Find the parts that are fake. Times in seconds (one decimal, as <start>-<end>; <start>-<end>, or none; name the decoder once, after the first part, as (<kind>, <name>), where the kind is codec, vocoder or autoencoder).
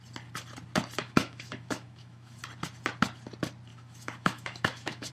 1.0-2.4 (autoencoder, DAC-VAE); 3.7-5.1